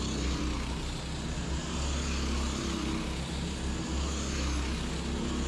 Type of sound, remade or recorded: recorded